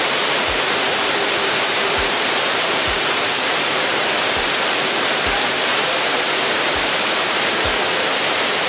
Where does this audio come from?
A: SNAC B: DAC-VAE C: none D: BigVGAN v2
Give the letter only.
D